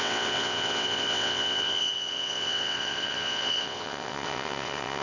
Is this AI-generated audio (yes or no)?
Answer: yes